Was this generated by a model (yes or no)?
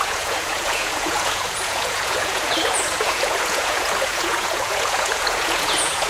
yes